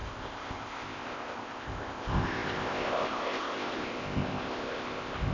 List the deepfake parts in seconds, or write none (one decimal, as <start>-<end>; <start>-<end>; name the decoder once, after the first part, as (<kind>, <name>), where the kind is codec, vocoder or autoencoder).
0.0-5.3 (codec, ZipCodec)